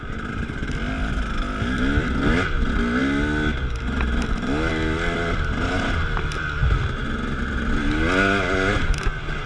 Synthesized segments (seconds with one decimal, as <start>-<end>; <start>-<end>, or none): none